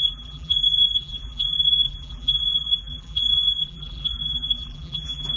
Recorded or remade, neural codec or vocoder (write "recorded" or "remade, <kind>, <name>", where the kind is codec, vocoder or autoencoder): remade, vocoder, BigVGAN v2